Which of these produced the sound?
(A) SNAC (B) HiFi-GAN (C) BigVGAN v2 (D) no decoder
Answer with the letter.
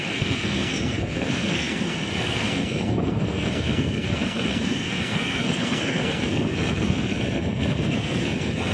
A